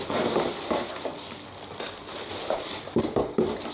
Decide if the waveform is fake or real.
real